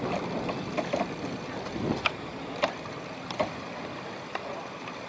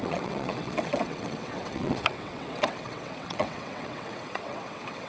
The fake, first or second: second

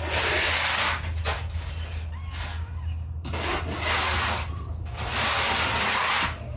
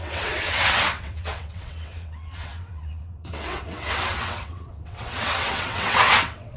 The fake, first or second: second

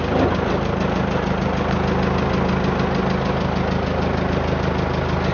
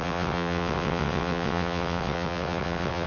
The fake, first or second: second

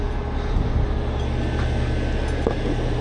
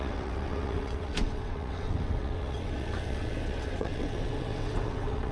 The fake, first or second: second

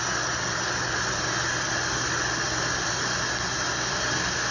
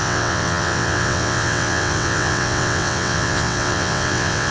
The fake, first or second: second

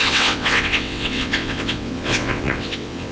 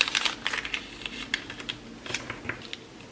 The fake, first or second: first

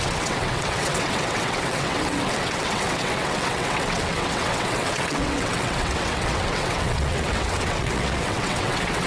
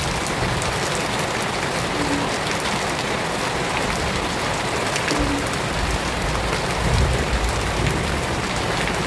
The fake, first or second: first